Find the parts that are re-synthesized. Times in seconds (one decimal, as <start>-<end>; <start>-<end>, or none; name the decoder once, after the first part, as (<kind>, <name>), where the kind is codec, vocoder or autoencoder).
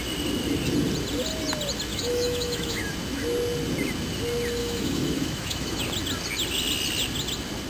1.9-2.9 (autoencoder, DAC-VAE); 4.6-5.8